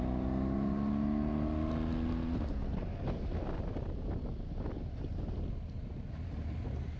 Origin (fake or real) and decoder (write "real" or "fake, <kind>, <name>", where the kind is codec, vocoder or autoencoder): real